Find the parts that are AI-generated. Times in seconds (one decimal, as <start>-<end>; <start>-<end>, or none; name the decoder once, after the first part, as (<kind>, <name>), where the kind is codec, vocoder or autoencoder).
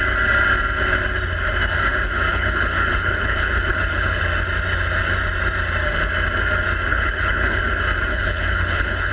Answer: 2.3-4.2 (codec, HILCodec); 6.9-7.6; 8.1-9.1